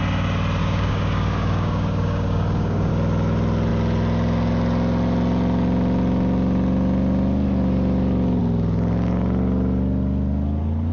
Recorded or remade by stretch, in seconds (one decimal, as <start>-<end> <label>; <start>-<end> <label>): 0.0-0.6 recorded; 0.6-2.9 remade; 2.9-10.9 recorded